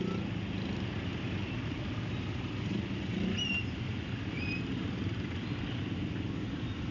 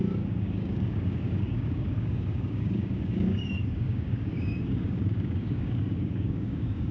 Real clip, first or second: first